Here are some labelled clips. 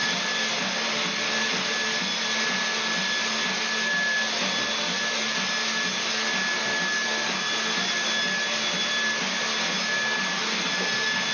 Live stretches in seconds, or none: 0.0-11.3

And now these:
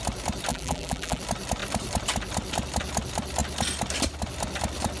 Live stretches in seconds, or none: 0.0-0.5; 1.2-5.0